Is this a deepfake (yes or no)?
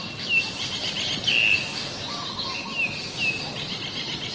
no